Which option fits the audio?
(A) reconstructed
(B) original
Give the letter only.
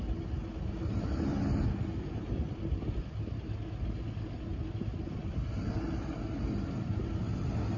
B